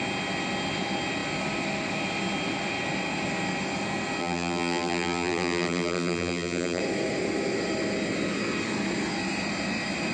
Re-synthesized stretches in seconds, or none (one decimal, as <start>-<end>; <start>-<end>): 4.2-6.8